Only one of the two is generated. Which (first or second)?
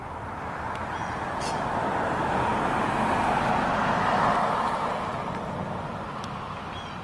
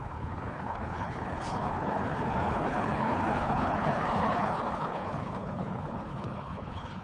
second